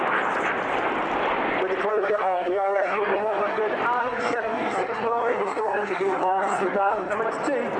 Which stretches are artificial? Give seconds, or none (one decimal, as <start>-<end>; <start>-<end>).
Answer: 1.9-3.6; 4.0-7.2